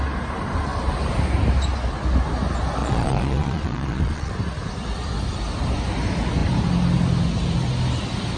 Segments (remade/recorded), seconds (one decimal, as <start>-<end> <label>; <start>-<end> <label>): 0.0-2.8 recorded; 2.8-4.3 remade; 4.3-8.4 recorded